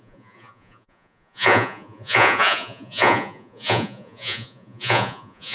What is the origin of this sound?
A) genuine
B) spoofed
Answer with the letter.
B